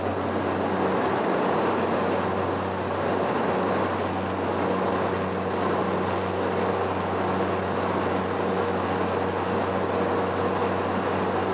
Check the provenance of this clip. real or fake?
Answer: real